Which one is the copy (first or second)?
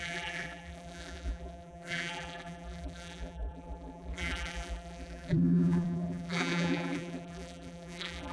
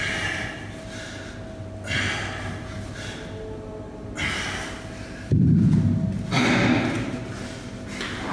first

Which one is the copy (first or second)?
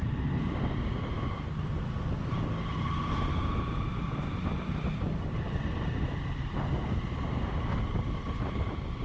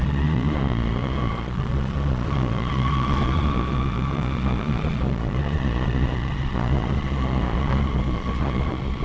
second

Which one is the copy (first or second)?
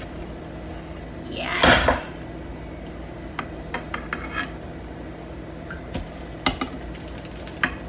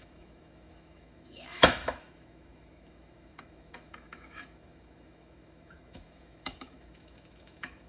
second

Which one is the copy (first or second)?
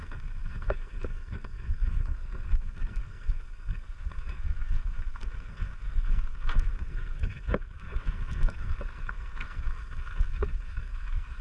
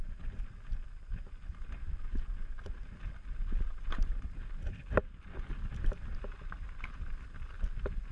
first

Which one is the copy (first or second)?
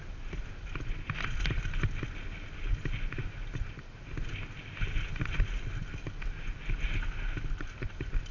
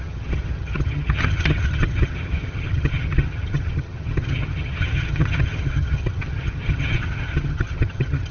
second